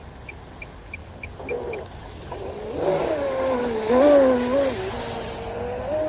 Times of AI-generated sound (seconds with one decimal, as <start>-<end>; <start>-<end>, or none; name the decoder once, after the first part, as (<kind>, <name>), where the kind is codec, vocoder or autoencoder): none